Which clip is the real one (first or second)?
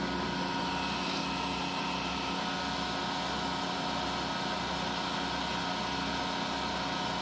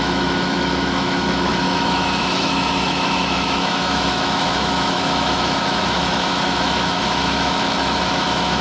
first